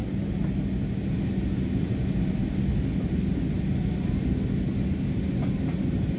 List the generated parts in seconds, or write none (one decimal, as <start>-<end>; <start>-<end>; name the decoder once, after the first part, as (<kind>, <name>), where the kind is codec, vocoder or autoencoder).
none